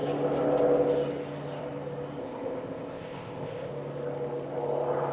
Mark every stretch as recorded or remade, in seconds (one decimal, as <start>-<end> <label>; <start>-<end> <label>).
0.0-2.2 recorded; 2.2-3.7 remade; 3.7-5.1 recorded